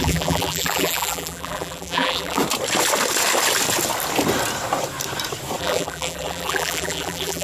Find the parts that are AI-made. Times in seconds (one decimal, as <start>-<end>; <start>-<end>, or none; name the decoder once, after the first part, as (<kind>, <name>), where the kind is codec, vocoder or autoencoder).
0.0-2.4 (vocoder, BigVGAN v2); 5.6-7.4